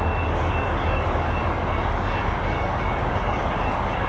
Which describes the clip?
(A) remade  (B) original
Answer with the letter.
A